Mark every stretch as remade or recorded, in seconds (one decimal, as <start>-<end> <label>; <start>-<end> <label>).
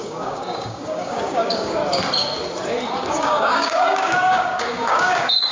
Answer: 0.0-1.8 remade; 1.8-3.1 recorded; 3.1-5.5 remade